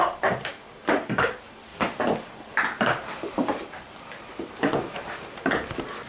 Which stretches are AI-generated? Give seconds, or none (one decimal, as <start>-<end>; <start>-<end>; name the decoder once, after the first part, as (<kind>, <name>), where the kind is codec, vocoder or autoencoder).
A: none